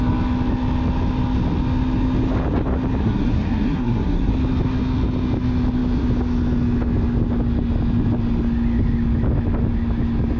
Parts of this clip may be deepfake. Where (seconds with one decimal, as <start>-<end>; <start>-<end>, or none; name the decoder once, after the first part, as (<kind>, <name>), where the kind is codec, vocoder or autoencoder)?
3.0-4.3 (codec, SNAC)